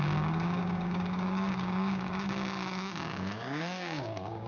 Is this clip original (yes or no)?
no